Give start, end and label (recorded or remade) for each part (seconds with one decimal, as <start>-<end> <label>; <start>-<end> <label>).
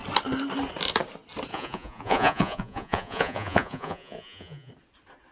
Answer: 0.0-1.5 recorded; 1.5-4.7 remade; 4.7-5.3 recorded